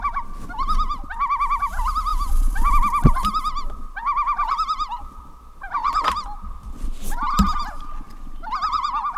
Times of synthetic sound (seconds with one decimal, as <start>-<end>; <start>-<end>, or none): 5.8-6.7